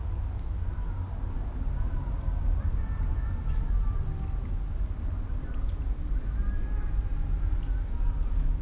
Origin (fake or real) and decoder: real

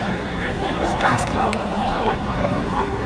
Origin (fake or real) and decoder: fake, codec, SNAC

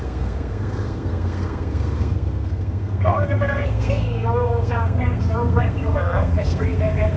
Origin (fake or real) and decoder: fake, codec, SNAC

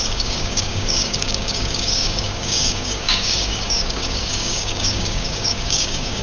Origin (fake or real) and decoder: fake, codec, DAC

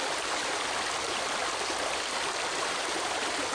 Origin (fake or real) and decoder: real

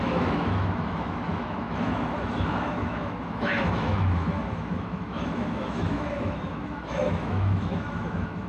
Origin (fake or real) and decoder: fake, autoencoder, DAC-VAE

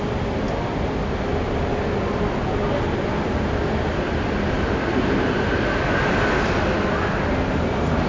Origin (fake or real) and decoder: real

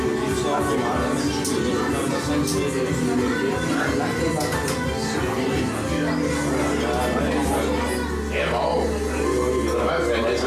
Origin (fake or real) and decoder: real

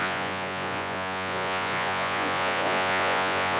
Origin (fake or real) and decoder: fake, vocoder, Vocos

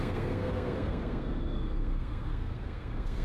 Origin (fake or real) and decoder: fake, codec, SNAC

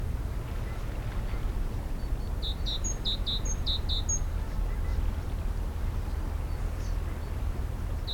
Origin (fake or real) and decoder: real